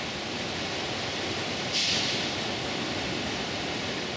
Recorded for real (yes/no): yes